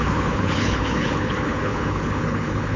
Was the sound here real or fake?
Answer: fake